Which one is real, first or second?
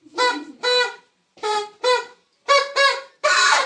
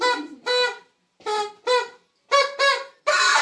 second